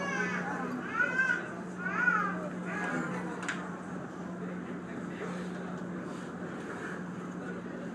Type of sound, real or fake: real